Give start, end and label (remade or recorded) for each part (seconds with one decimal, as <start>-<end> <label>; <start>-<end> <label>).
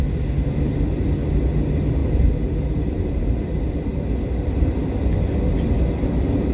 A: 0.0-2.0 recorded; 2.0-3.3 remade; 3.3-6.5 recorded